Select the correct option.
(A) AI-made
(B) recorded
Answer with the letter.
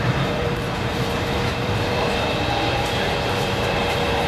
A